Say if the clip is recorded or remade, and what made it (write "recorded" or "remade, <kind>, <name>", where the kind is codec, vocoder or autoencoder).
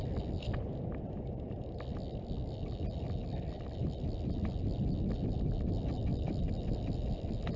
recorded